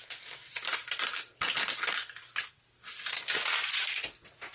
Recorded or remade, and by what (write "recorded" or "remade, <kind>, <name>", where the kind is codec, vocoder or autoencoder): recorded